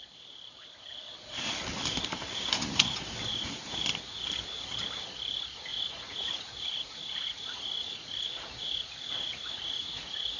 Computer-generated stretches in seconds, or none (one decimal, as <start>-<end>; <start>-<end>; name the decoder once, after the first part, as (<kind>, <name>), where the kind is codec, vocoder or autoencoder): 3.3-3.8 (vocoder, Vocos); 5.7-10.4